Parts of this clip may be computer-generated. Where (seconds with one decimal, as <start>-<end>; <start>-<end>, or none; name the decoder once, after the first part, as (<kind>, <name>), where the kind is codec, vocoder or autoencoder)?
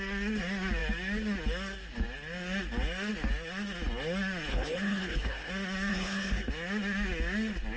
4.5-5.5 (codec, HILCodec); 5.9-6.5